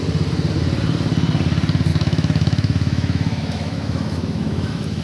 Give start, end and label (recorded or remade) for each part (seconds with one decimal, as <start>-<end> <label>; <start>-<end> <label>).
0.0-1.9 recorded; 1.9-5.0 remade